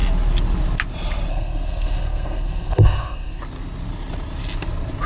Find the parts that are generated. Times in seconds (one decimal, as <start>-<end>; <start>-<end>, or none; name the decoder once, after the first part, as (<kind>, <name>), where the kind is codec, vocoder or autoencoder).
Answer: 1.3-3.4 (codec, SNAC)